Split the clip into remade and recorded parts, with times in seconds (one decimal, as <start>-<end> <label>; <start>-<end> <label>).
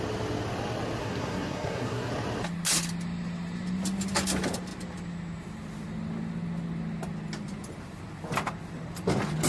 0.0-1.0 recorded; 1.0-2.1 remade; 2.1-9.5 recorded